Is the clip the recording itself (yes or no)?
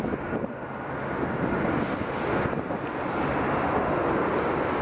yes